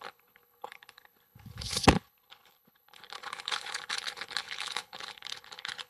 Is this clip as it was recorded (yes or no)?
no